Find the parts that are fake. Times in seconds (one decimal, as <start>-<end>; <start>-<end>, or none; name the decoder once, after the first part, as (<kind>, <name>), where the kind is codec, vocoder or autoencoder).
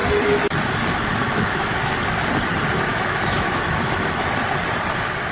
1.2-1.9 (autoencoder, DAC-VAE); 2.9-4.3